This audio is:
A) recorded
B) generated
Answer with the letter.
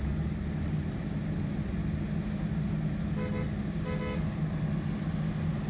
A